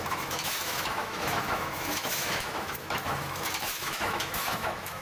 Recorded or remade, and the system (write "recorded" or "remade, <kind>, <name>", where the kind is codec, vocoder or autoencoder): remade, autoencoder, DAC-VAE